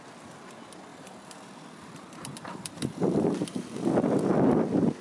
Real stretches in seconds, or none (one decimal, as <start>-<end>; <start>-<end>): 0.0-0.9; 3.9-5.0